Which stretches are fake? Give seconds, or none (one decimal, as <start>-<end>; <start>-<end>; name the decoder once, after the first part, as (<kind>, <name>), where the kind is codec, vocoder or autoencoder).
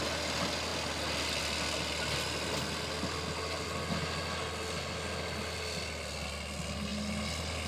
none